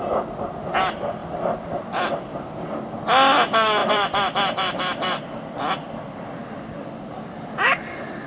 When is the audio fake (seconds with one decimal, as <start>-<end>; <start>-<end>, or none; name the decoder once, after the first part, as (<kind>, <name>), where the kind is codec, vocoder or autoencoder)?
1.2-2.2 (vocoder, BigVGAN v2); 3.8-6.6